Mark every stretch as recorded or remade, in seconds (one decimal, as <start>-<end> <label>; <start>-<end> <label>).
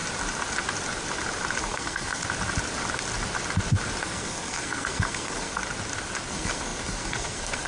0.0-1.6 recorded; 1.6-2.2 remade; 2.2-4.0 recorded; 4.0-5.6 remade; 5.6-6.3 recorded; 6.3-7.7 remade